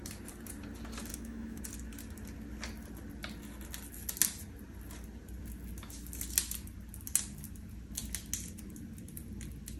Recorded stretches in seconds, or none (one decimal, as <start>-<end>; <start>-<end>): 0.0-1.1; 1.6-9.8